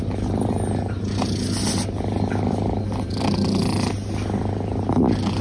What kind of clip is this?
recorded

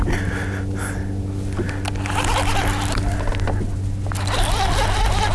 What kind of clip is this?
recorded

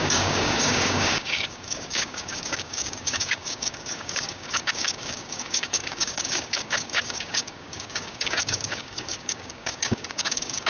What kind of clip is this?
remade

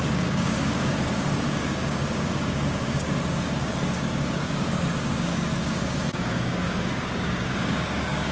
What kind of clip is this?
remade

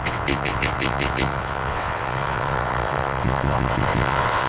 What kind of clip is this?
remade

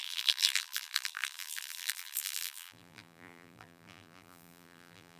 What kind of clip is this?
remade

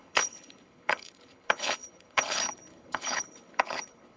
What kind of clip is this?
remade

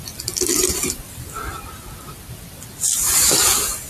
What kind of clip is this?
recorded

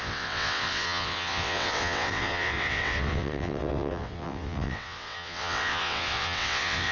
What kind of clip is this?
remade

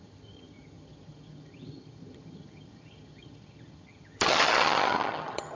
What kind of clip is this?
remade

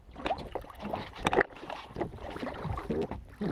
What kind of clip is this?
remade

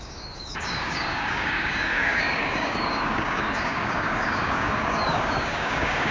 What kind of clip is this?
remade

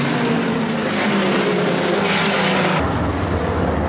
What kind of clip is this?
recorded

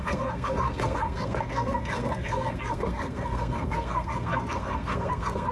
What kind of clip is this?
remade